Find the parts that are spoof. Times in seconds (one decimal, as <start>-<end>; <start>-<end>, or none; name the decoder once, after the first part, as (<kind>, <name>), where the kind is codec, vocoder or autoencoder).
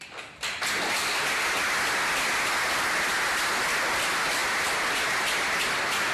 none